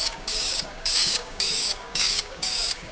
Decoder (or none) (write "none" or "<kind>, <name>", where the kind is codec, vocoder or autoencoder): codec, DAC